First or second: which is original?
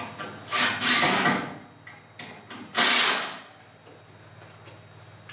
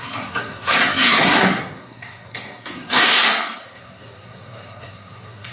first